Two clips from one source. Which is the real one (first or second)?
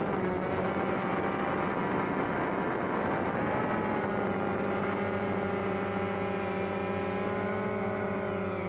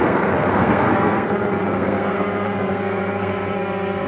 first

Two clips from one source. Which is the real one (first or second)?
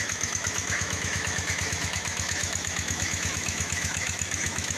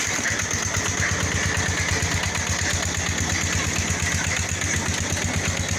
second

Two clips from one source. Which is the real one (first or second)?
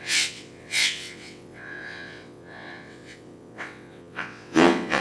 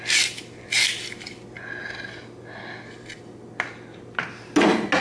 second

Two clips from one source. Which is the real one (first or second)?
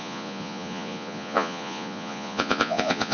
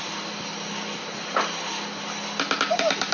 second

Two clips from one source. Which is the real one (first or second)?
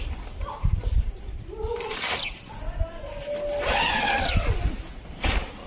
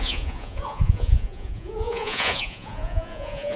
first